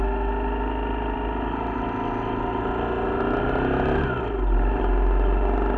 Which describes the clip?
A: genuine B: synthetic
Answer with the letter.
A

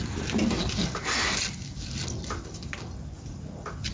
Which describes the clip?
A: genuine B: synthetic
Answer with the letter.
A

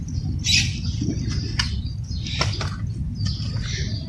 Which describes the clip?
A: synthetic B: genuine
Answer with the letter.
B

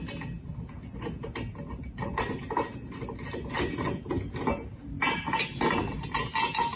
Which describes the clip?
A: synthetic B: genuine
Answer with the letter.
B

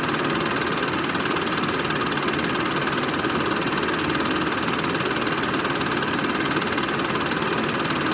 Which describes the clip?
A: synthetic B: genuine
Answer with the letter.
B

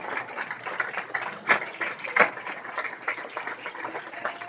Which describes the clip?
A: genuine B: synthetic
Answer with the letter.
A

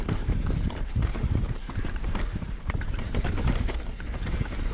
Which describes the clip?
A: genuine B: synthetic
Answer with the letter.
B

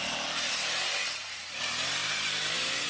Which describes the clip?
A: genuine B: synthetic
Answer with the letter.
A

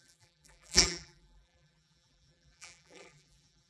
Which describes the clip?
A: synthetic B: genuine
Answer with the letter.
A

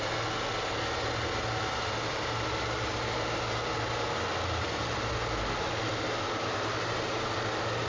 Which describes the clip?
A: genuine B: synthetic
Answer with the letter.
A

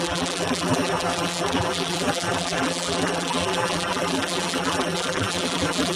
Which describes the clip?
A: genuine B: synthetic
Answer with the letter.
B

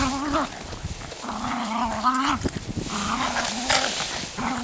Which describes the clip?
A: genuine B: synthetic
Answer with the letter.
A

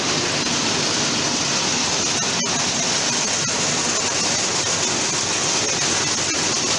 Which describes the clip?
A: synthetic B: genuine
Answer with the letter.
B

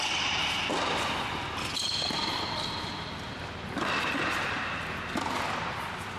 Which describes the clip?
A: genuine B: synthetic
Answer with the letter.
A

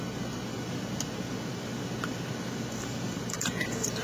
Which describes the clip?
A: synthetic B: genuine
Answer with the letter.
B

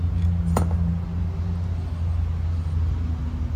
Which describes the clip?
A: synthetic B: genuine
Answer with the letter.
B